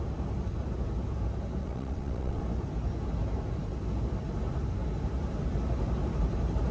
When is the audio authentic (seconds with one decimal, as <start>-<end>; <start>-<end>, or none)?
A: 0.0-1.6; 2.4-6.7